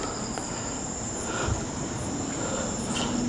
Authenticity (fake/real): fake